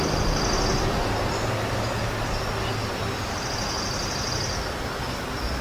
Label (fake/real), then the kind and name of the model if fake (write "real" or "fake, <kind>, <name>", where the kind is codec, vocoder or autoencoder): real